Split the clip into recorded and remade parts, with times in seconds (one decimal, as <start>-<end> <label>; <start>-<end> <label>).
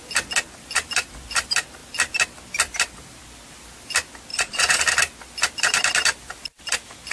0.0-4.3 recorded; 4.3-4.8 remade; 4.8-7.1 recorded